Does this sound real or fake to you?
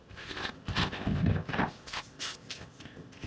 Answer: fake